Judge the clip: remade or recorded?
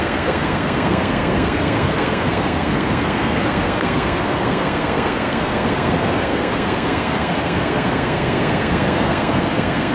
remade